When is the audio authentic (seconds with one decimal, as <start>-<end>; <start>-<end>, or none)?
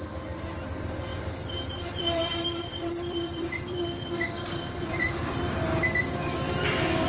0.0-1.1; 5.4-7.1